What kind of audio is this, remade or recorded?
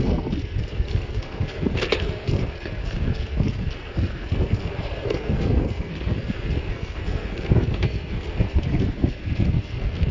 remade